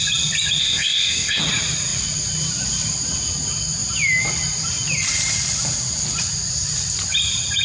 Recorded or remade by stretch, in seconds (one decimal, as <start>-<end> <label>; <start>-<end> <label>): 0.0-0.6 recorded; 0.6-1.4 remade; 1.4-7.6 recorded

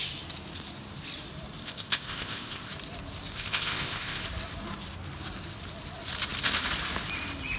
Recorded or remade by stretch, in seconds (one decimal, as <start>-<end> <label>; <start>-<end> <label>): 0.0-1.6 recorded; 1.6-2.7 remade; 2.7-3.3 recorded; 3.3-4.2 remade; 4.2-7.6 recorded

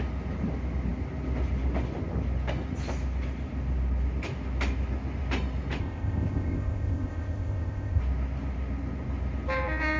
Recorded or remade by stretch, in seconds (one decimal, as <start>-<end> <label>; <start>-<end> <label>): 0.0-5.8 recorded; 5.8-8.0 remade; 8.0-10.0 recorded

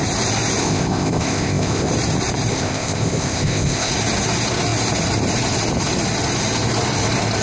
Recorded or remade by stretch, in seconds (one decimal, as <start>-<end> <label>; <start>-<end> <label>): 0.0-0.6 recorded; 0.6-1.9 remade; 1.9-2.5 recorded; 2.5-3.9 remade; 3.9-7.4 recorded

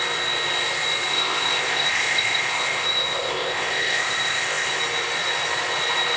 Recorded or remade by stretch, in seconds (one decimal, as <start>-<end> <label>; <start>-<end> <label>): 0.0-1.1 recorded; 1.1-4.8 remade; 4.8-6.2 recorded

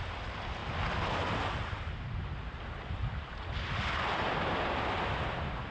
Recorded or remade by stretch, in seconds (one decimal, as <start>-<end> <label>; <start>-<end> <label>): 0.0-5.7 recorded

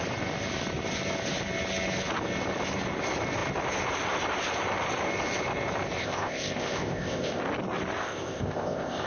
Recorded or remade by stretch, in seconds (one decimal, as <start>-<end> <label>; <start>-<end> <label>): 0.0-6.0 recorded; 6.0-7.4 remade; 7.4-8.0 recorded; 8.0-9.1 remade

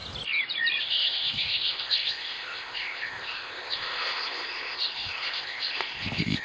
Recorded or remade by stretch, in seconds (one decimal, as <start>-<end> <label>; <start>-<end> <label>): 0.0-0.8 recorded; 0.8-6.4 remade